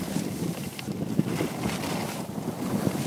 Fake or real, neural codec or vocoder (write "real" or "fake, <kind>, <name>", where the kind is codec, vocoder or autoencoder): real